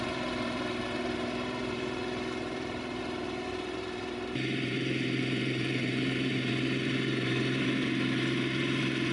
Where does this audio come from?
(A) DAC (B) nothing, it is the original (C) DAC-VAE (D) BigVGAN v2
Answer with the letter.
D